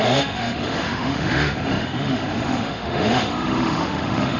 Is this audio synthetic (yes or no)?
yes